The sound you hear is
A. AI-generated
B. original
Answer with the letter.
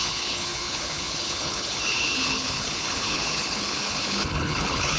A